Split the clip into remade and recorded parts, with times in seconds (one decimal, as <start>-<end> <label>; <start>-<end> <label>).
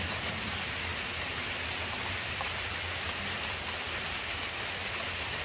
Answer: 0.0-5.4 recorded